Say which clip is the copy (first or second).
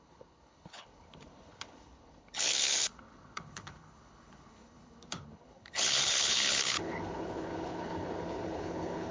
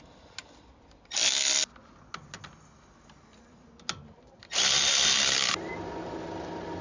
first